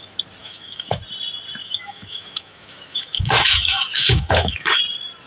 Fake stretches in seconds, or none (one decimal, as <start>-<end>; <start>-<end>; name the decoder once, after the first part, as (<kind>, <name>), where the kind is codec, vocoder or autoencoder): 0.4-1.0 (autoencoder, DAC-VAE); 1.6-4.8